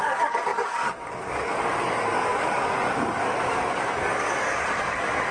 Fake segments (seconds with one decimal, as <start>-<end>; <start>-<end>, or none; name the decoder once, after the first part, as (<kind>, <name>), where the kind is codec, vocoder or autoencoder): 0.0-5.3 (codec, DAC)